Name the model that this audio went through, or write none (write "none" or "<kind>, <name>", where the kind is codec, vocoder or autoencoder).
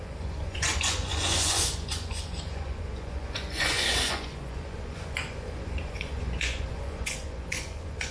vocoder, Vocos